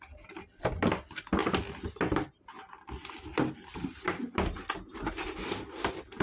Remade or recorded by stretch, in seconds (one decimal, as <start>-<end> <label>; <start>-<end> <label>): 0.0-6.2 recorded